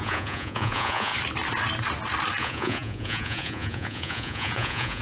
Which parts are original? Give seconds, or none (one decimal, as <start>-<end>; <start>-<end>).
1.1-2.4

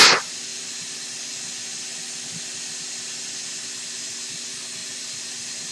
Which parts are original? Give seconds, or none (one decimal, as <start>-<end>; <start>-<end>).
0.0-5.7

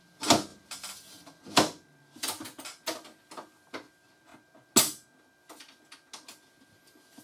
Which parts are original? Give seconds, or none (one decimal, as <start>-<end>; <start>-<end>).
0.0-7.2

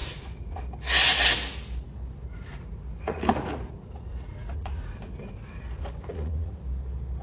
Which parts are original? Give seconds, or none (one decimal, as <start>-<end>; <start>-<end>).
0.6-2.3; 6.6-7.2